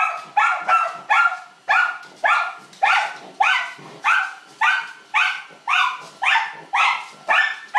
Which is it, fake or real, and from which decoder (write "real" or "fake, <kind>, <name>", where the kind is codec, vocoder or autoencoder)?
real